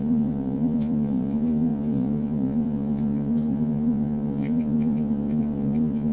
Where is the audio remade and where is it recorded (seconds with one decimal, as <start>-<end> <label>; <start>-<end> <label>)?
0.0-6.1 remade